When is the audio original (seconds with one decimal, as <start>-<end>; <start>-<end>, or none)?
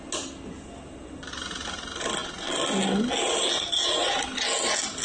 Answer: 0.0-5.0